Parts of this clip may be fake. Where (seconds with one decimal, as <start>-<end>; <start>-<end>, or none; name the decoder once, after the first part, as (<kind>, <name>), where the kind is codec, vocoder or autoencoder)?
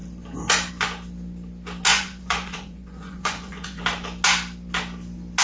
1.9-3.8 (vocoder, Vocos)